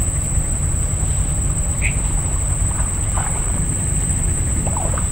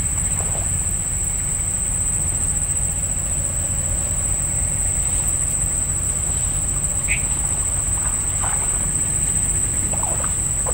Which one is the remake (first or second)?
first